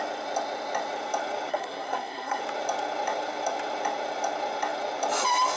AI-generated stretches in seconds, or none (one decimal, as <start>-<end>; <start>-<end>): 1.5-2.4